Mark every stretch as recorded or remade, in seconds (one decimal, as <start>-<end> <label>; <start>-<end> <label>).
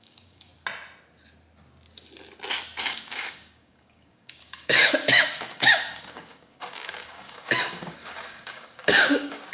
0.0-0.5 remade; 0.5-2.8 recorded; 2.8-9.5 remade